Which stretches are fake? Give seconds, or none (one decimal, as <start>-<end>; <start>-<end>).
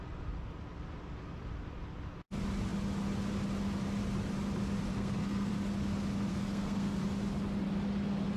4.9-5.5; 6.3-7.0